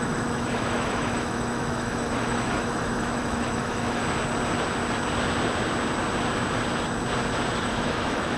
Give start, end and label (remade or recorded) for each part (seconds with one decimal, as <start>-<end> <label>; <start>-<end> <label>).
0.0-4.0 remade; 4.0-7.6 recorded; 7.6-8.4 remade